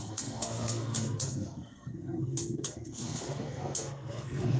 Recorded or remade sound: remade